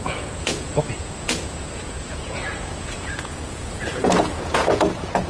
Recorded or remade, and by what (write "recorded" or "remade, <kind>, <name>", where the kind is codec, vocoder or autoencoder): remade, vocoder, Vocos